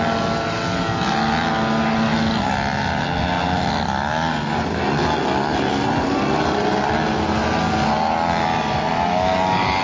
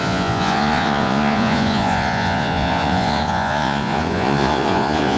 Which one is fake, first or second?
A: second